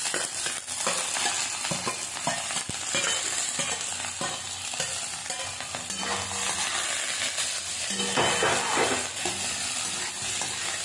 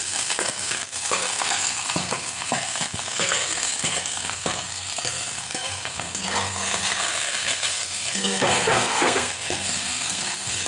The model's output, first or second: second